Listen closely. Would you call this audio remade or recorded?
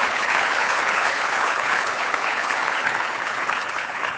remade